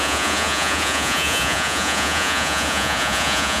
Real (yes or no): no